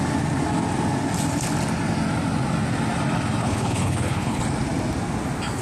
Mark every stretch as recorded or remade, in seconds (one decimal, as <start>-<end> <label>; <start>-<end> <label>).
0.0-3.4 recorded; 3.4-4.4 remade; 4.4-5.6 recorded